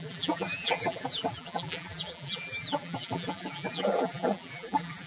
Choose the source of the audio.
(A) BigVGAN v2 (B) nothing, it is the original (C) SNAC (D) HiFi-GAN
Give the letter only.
A